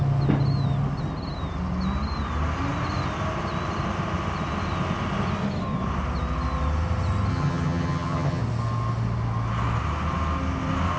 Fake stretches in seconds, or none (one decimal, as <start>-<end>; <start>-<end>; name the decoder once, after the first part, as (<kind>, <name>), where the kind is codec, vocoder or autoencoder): 7.3-8.4 (vocoder, HiFi-GAN)